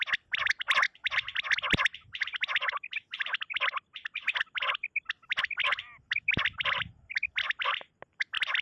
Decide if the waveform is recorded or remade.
recorded